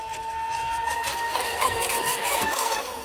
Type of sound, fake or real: fake